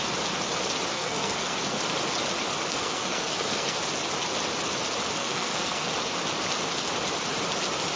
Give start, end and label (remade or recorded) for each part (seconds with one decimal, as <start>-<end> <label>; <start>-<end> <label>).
0.0-0.9 recorded; 0.9-1.8 remade; 1.8-2.7 recorded; 2.7-3.8 remade; 3.8-5.2 recorded; 5.2-5.9 remade; 5.9-8.0 recorded